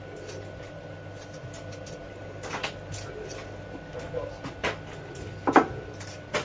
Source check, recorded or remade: recorded